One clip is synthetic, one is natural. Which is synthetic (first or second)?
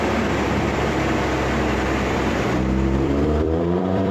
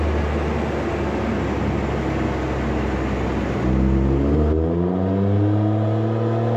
first